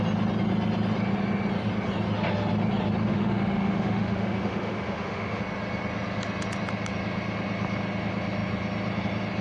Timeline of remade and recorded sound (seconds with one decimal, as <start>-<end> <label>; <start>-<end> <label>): 0.0-3.0 recorded; 3.0-5.4 remade; 5.4-9.4 recorded